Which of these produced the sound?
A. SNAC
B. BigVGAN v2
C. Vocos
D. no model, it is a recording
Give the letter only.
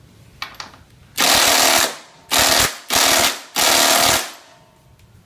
D